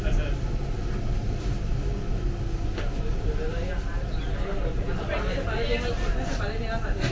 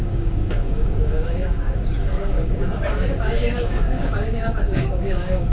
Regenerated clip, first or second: second